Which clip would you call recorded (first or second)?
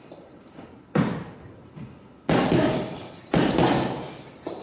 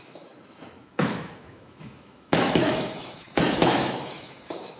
first